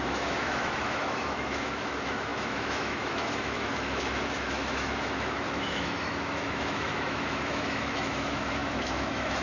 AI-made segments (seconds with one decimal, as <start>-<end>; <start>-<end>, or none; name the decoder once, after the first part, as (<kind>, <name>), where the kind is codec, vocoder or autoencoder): 0.0-9.4 (autoencoder, DAC-VAE)